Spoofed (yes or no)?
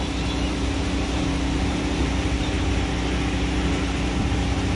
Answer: no